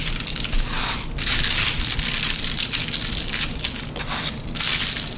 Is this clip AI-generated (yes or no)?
no